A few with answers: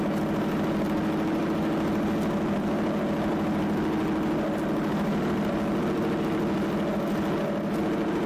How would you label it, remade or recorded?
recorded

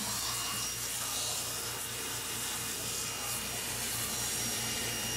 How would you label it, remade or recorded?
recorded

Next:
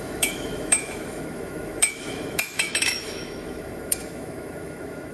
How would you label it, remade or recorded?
remade